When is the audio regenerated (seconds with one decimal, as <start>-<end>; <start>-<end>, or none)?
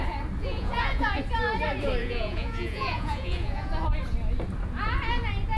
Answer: 0.4-1.2; 2.0-3.7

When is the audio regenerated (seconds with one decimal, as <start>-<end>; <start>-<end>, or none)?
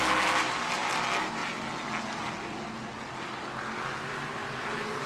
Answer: none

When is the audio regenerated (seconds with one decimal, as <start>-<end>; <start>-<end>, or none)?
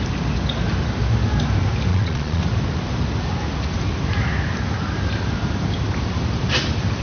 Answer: 1.9-2.4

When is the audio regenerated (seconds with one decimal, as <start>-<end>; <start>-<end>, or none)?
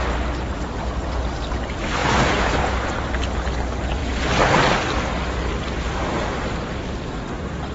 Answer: 2.0-2.9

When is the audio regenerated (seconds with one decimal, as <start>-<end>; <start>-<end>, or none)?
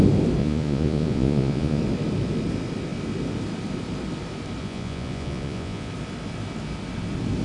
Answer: 0.4-1.8; 4.6-5.9